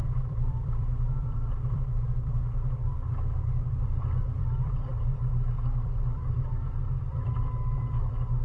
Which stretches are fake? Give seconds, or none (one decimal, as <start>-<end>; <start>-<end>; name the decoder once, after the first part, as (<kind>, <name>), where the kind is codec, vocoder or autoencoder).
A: 0.0-8.4 (vocoder, BigVGAN v2)